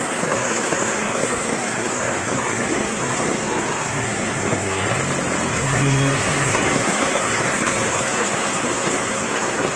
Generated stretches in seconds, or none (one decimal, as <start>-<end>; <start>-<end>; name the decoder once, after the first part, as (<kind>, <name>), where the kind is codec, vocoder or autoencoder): 0.0-5.0 (codec, SNAC); 5.5-9.8